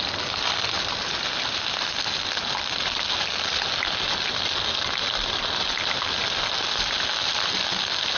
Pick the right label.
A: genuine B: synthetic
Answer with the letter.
A